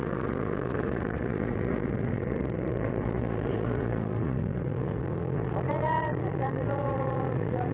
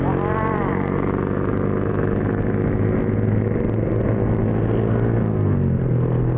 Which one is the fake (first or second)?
first